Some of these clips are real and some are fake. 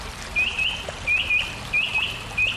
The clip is real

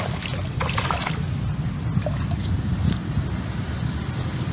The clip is fake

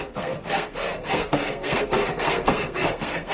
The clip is fake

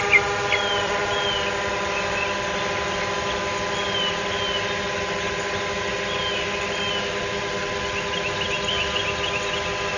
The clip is real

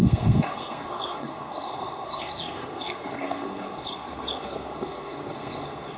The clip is fake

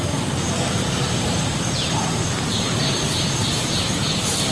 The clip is fake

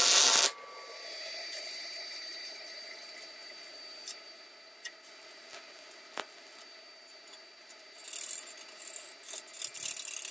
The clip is real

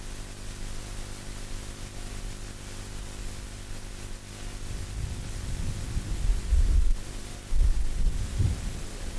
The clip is real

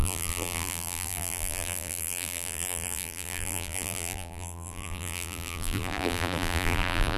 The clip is fake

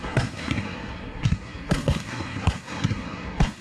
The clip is fake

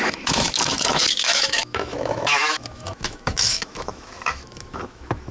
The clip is fake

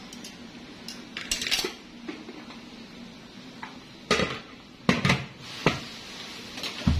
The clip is real